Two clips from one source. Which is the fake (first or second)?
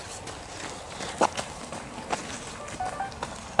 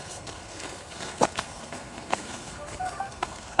second